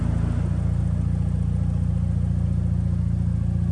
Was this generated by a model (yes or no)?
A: no